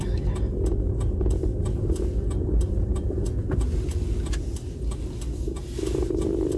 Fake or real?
real